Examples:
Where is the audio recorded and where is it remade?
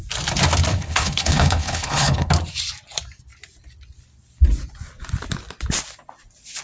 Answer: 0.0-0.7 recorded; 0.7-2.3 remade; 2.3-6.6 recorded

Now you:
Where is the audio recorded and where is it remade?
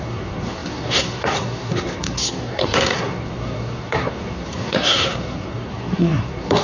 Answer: 0.0-6.6 remade